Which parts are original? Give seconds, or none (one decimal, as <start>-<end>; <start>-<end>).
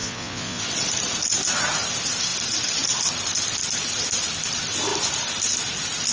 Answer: 0.6-6.1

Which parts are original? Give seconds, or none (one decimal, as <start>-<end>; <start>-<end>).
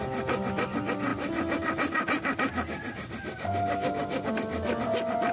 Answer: 0.0-5.3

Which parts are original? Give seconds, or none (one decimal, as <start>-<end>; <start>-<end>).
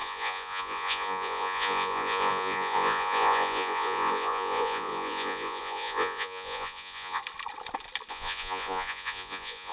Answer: 7.2-8.1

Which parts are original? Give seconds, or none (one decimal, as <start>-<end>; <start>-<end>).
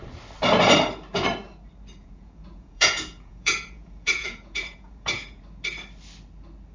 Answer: 0.0-2.0; 5.4-6.7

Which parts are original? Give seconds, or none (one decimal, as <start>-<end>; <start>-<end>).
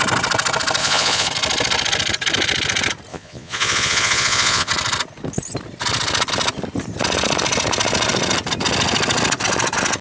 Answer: 0.0-0.8; 1.3-3.1; 4.7-10.0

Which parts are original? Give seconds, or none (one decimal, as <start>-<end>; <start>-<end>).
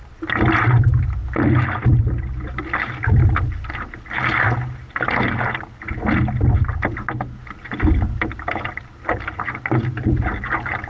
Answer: 0.0-10.9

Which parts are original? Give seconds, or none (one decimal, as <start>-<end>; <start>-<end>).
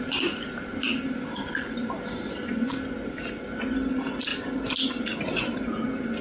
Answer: 0.0-6.2